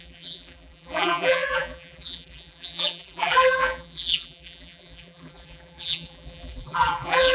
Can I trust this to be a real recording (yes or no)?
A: no